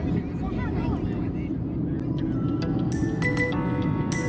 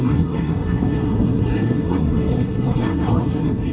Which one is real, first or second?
first